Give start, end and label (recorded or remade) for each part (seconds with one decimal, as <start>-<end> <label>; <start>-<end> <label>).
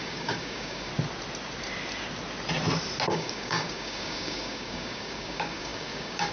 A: 0.0-0.9 remade; 0.9-3.1 recorded; 3.1-6.3 remade